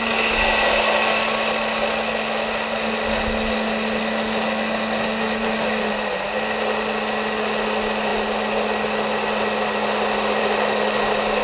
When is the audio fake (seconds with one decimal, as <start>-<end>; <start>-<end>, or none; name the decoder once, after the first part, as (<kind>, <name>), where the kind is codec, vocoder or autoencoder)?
none